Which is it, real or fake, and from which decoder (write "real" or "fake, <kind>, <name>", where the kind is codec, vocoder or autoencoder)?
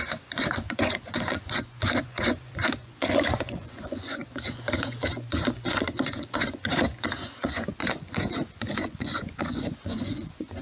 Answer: fake, vocoder, Vocos